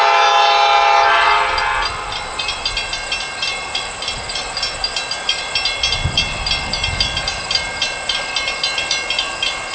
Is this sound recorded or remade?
recorded